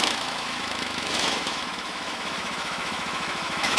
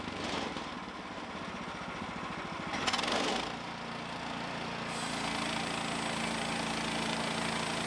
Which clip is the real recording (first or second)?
second